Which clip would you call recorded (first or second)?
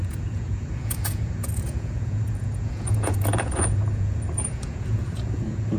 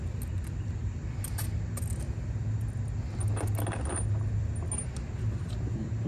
second